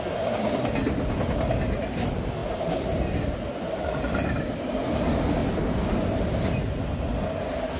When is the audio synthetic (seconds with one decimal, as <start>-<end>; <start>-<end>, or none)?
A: none